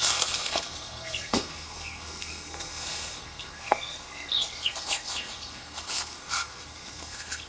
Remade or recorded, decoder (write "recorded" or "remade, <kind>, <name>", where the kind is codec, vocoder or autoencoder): remade, codec, SNAC